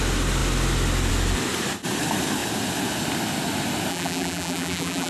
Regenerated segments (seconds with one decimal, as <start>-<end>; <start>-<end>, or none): 3.9-5.1

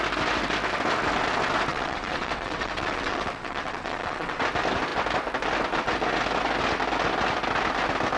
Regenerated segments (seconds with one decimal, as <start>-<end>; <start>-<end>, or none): 1.7-4.4

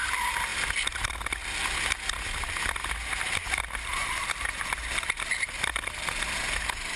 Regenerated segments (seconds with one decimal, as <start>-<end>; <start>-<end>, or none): 4.0-6.4

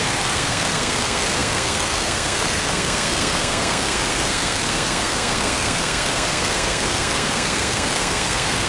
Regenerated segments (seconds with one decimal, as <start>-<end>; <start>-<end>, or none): 0.0-8.7